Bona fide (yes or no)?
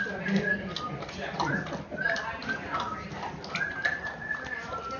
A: yes